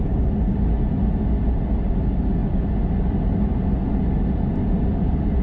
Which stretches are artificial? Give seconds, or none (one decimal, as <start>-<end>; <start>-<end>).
none